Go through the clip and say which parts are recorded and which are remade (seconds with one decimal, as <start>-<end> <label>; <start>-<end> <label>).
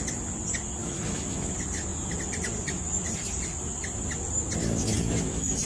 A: 0.0-0.8 recorded; 0.8-1.5 remade; 1.5-4.6 recorded; 4.6-5.7 remade